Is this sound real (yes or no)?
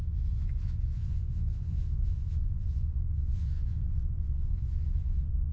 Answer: no